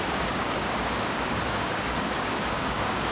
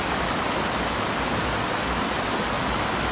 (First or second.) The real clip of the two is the second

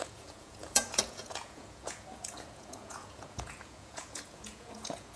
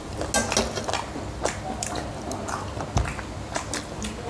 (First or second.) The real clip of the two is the second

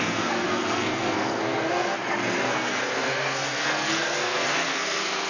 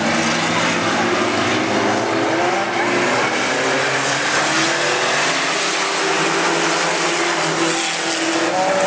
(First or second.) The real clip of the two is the second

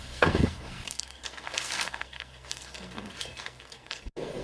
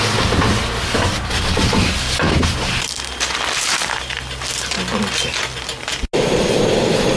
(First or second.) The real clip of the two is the second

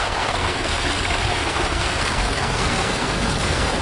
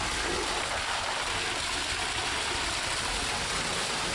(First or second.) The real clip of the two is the second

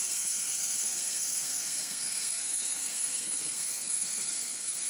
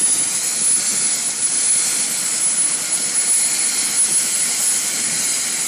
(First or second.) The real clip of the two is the second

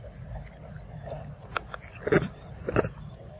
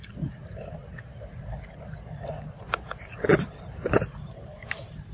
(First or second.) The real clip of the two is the first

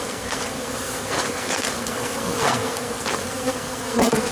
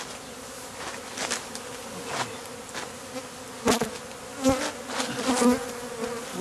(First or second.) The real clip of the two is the second